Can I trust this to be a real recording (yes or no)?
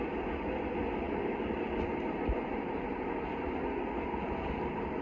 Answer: yes